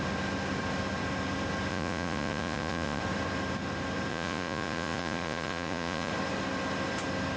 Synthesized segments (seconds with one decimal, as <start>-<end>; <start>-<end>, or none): 1.7-3.0; 4.1-6.1